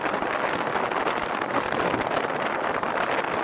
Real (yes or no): yes